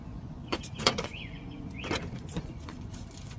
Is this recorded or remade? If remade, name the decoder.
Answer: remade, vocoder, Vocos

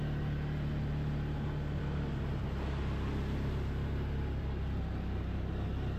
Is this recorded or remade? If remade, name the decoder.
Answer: recorded